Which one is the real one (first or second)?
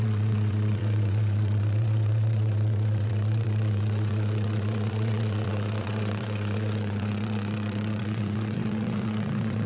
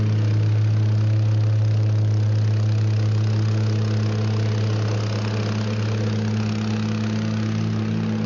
second